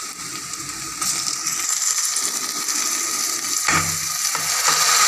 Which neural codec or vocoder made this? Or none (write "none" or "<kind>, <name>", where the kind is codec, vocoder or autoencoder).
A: none